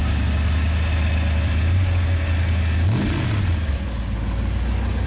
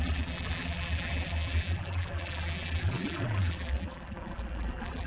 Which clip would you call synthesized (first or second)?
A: second